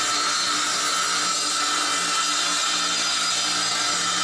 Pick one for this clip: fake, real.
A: real